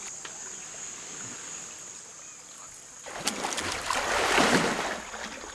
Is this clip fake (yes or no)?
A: no